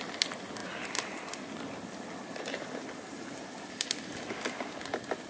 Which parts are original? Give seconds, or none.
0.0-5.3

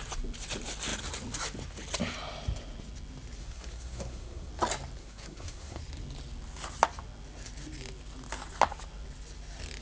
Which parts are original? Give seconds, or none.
0.0-3.4; 4.5-5.0; 5.8-9.8

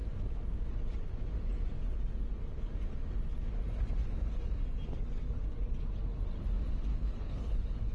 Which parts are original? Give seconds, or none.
0.0-6.9

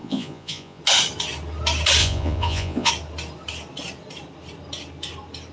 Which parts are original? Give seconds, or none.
0.8-2.0; 2.9-5.5

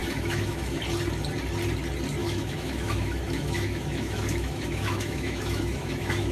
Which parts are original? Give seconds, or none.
0.8-2.2